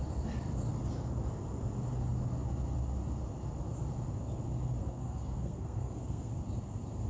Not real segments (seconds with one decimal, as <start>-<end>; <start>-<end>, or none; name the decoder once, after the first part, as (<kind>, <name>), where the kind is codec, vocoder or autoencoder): 4.8-6.3 (codec, SNAC)